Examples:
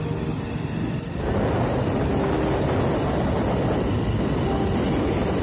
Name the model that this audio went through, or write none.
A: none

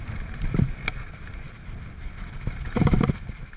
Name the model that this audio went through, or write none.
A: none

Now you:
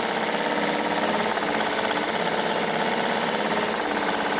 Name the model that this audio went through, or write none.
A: none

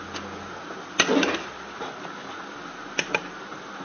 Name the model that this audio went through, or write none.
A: none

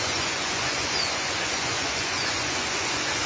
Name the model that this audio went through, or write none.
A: vocoder, Vocos